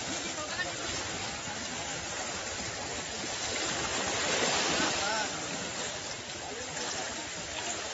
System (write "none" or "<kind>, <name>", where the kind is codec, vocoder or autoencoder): none